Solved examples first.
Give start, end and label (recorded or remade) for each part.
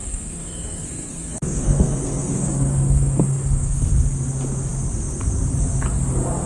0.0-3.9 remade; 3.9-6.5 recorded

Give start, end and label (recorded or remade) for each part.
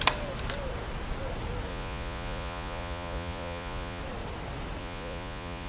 0.0-1.7 recorded; 1.7-4.0 remade; 4.0-4.8 recorded; 4.8-5.7 remade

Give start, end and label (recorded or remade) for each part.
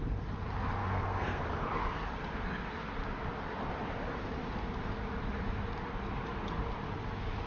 0.0-0.8 recorded; 0.8-1.4 remade; 1.4-7.5 recorded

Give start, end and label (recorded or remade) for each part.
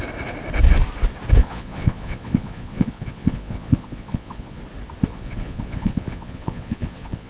0.0-1.4 recorded; 1.4-4.6 remade; 4.6-5.1 recorded; 5.1-7.3 remade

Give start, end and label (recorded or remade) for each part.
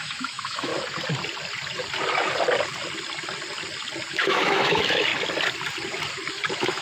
0.0-0.7 remade; 0.7-4.1 recorded; 4.1-5.1 remade; 5.1-6.3 recorded; 6.3-6.8 remade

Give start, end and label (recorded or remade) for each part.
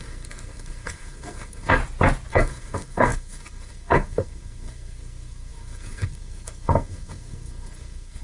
0.0-1.8 remade; 1.8-2.3 recorded; 2.3-8.2 remade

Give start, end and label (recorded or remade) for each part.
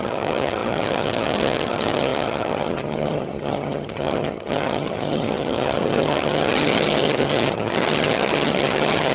0.0-9.1 remade